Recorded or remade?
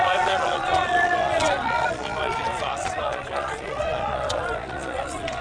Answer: remade